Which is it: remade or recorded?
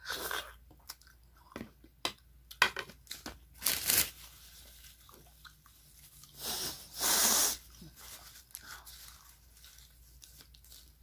recorded